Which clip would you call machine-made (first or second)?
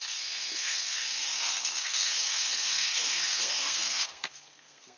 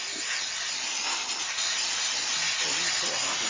first